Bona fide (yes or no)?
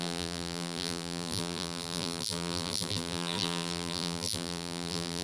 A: no